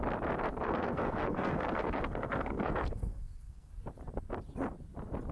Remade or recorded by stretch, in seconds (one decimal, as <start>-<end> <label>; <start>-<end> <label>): 0.0-0.5 recorded; 0.5-3.7 remade; 3.7-5.3 recorded